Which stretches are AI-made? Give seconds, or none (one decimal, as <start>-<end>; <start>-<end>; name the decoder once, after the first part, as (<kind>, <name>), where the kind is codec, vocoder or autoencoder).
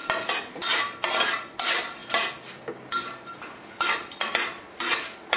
none